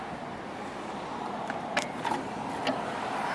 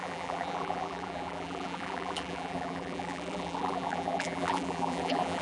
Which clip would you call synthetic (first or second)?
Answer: second